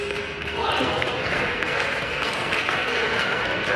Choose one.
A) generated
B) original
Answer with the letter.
A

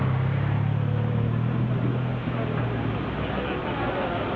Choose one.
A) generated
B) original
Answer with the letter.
B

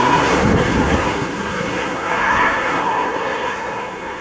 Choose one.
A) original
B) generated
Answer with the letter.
B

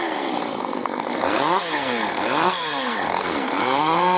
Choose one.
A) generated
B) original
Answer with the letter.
A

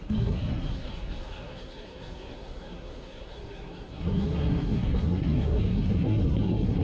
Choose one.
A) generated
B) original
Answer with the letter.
A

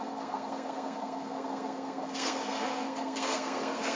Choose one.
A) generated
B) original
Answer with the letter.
A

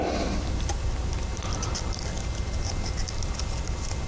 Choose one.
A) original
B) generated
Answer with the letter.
A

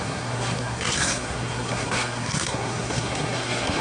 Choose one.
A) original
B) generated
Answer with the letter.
B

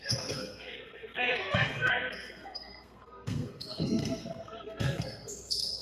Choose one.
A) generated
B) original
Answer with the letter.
A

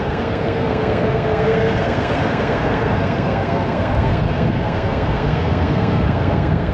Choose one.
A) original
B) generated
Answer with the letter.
B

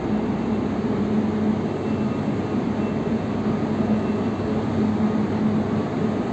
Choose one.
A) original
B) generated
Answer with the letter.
A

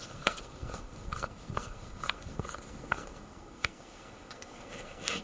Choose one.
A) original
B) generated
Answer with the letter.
B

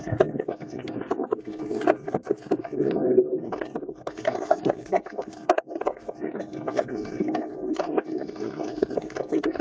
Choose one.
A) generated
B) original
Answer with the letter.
A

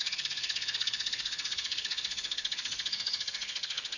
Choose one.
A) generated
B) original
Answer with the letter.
A